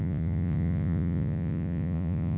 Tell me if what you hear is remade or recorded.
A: remade